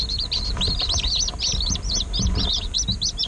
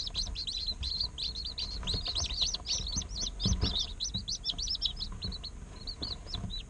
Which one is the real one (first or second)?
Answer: second